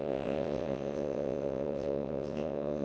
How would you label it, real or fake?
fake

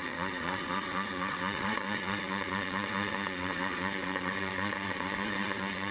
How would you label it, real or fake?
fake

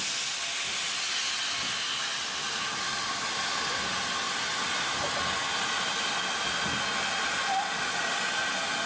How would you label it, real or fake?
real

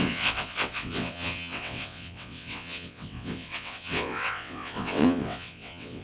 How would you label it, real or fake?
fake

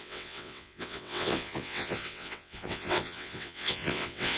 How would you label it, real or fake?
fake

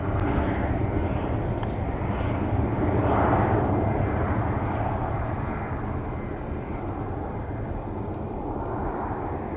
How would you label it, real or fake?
real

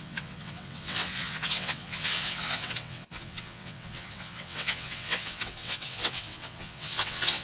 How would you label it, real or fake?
fake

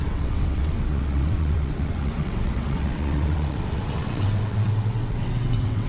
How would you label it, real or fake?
fake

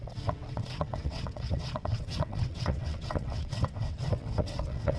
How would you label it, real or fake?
fake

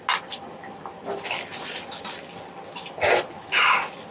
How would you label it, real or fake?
real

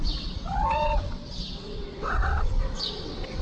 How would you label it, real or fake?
fake